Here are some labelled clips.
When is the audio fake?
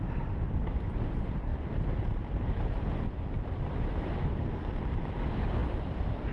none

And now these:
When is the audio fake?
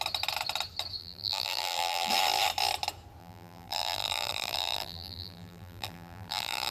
1.0-2.1 (vocoder, BigVGAN v2); 3.2-6.7